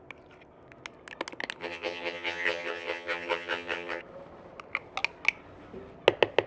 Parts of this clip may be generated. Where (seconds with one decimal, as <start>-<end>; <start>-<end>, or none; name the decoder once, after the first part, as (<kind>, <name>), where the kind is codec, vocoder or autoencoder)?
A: 1.6-4.0 (vocoder, HiFi-GAN)